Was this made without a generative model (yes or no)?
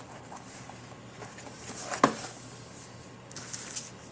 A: yes